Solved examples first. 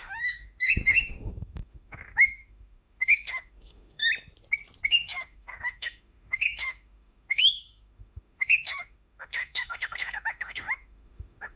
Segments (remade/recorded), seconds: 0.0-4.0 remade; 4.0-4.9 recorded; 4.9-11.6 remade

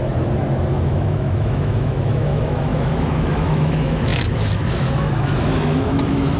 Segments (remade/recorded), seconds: 0.0-0.7 recorded; 0.7-6.4 remade

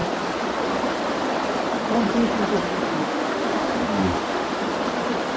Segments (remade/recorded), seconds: 0.0-2.8 recorded; 2.8-4.5 remade; 4.5-5.4 recorded